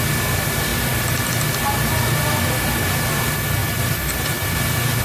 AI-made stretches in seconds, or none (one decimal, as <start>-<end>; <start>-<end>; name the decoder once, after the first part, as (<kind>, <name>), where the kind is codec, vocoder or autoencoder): 0.7-1.3 (vocoder, BigVGAN v2); 3.6-4.5